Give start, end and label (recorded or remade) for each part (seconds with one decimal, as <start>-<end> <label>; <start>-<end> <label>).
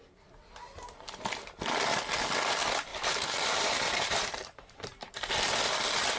0.0-2.9 recorded; 2.9-5.3 remade; 5.3-6.2 recorded